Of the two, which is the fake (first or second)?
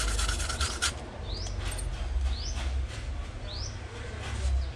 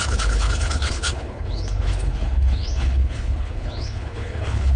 second